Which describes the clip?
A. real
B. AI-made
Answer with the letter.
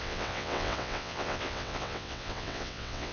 B